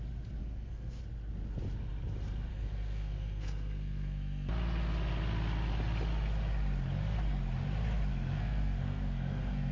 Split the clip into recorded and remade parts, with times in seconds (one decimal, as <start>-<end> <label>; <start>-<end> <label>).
0.0-0.4 recorded; 0.4-1.0 remade; 1.0-2.5 recorded; 2.5-4.5 remade; 4.5-8.1 recorded; 8.1-9.7 remade